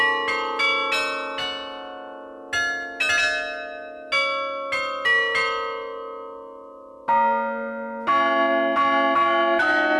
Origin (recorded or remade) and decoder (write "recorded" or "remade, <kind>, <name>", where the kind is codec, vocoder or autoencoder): recorded